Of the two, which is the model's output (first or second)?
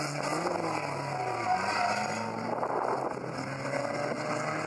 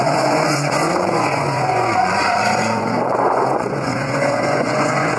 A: second